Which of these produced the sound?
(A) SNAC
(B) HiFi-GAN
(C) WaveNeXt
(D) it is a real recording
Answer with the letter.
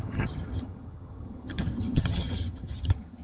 B